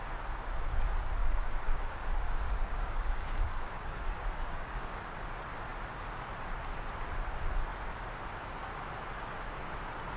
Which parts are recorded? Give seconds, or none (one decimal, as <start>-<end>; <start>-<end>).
0.0-1.2; 5.0-10.2